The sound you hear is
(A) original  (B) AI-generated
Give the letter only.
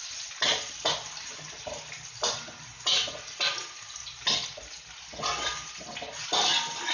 A